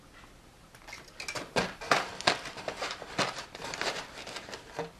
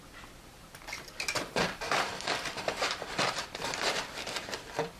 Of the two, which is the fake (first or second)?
second